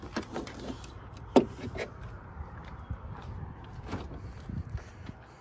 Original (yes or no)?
yes